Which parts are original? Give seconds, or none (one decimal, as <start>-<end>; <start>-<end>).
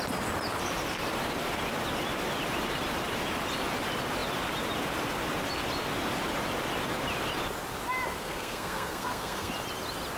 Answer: 0.0-8.2; 9.5-10.2